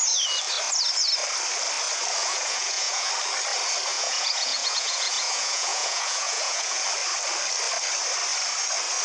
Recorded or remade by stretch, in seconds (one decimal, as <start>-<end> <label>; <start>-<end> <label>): 0.0-2.2 recorded; 2.2-3.1 remade; 3.1-3.9 recorded; 3.9-6.8 remade; 6.8-9.0 recorded